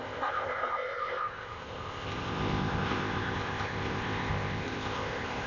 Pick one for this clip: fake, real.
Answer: fake